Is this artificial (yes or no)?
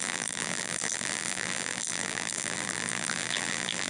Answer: yes